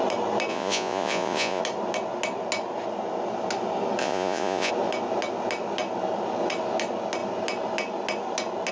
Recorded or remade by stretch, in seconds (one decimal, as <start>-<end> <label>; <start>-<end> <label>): 0.0-0.5 recorded; 0.5-1.6 remade; 1.6-4.0 recorded; 4.0-4.7 remade; 4.7-8.7 recorded

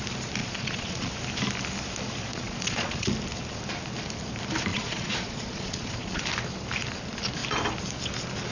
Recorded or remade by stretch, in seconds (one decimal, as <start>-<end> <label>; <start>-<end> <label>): 0.0-0.4 recorded; 0.4-1.1 remade; 1.1-2.3 recorded; 2.3-3.1 remade; 3.1-4.7 recorded; 4.7-6.2 remade; 6.2-8.5 recorded

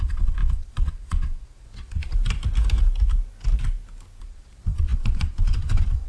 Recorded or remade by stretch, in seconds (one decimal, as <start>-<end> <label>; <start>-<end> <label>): 0.0-2.1 remade; 2.1-4.2 recorded; 4.2-6.1 remade

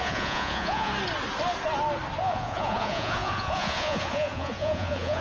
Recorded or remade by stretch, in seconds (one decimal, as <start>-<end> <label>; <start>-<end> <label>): 0.0-0.9 remade; 0.9-2.2 recorded; 2.2-5.2 remade

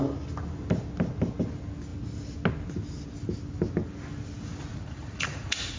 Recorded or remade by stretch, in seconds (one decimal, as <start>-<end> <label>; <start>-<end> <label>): 0.0-4.7 recorded; 4.7-5.8 remade

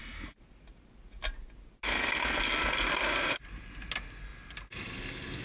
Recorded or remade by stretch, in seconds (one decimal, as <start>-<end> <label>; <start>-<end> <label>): 0.0-5.4 recorded